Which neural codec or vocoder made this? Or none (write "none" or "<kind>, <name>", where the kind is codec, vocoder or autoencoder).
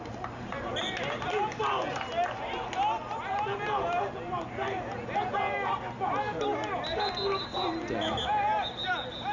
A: none